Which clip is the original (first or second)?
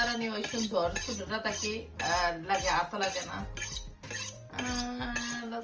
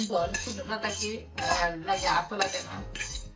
first